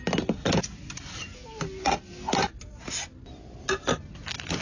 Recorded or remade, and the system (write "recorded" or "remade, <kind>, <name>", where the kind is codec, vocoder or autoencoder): recorded